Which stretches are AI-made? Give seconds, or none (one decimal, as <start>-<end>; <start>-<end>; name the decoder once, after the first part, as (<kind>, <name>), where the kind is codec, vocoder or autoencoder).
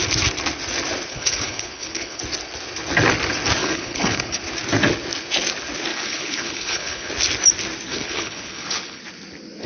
1.1-2.2 (codec, HILCodec); 3.6-4.4; 5.9-7.1; 7.9-9.0